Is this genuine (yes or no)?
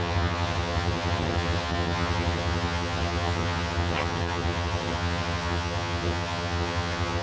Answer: no